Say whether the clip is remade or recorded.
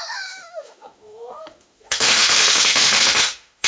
remade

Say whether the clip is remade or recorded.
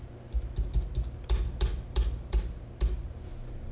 recorded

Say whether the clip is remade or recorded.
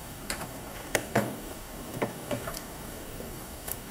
remade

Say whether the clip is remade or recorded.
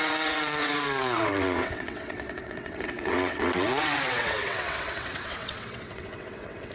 remade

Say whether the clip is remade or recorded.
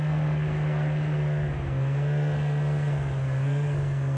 remade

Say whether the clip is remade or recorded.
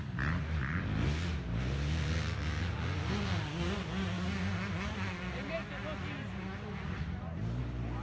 recorded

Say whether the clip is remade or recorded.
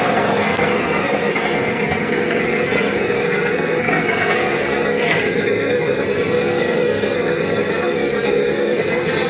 remade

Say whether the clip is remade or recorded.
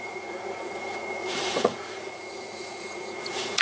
remade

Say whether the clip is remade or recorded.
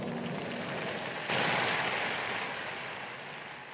recorded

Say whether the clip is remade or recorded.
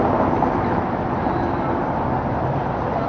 recorded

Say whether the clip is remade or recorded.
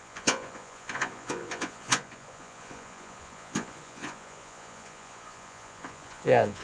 remade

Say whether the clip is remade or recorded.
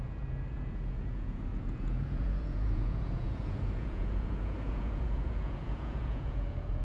remade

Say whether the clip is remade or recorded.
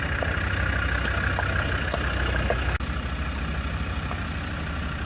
recorded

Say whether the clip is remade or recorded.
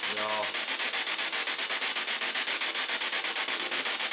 recorded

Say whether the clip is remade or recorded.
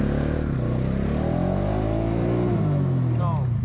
recorded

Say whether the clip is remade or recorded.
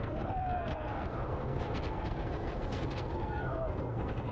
remade